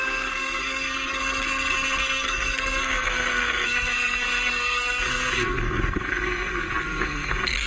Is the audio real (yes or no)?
no